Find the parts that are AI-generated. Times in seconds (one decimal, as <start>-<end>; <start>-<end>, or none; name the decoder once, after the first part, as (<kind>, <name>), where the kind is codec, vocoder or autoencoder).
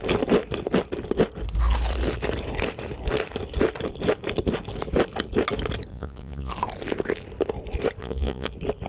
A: 5.9-6.5 (vocoder, Vocos); 8.0-8.5